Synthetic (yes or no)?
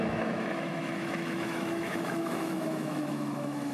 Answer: yes